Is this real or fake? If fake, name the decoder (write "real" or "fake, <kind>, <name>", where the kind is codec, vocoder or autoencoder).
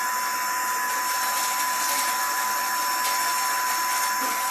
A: real